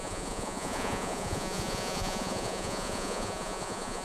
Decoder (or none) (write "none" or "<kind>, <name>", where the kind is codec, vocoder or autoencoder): vocoder, Vocos